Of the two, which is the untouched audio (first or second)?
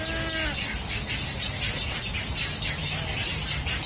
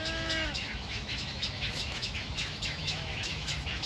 first